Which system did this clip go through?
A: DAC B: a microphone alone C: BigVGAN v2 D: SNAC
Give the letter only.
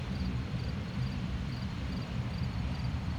C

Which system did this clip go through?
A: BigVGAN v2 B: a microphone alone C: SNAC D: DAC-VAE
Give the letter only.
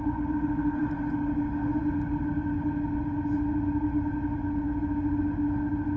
B